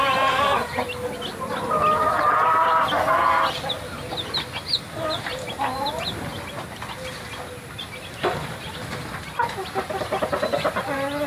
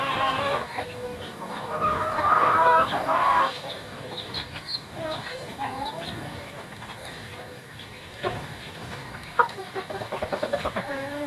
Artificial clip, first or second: second